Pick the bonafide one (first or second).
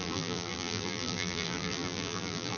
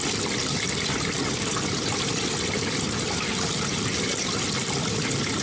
second